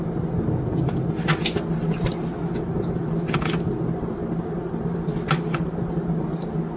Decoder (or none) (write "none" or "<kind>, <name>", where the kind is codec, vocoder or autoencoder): none